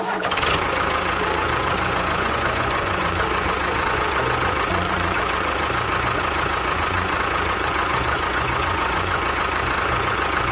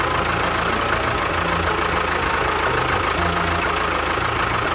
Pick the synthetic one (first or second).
first